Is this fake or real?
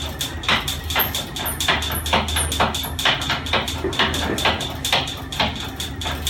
real